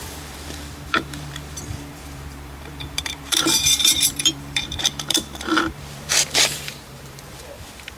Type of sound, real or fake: fake